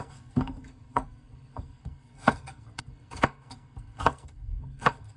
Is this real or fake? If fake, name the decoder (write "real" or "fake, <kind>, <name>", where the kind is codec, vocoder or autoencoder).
fake, codec, SNAC